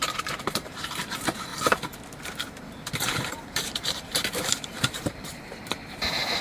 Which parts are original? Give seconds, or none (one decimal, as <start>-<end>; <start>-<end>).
1.5-3.5